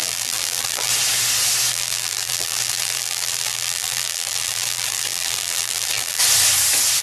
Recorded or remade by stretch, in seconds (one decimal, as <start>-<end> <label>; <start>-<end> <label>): 0.0-0.9 remade; 0.9-1.7 recorded; 1.7-6.2 remade; 6.2-7.0 recorded

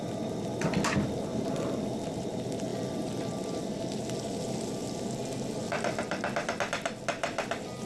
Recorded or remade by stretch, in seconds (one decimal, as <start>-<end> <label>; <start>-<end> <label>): 0.0-7.9 recorded

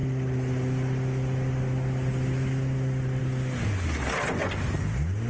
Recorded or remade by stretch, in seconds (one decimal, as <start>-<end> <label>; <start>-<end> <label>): 0.0-5.3 recorded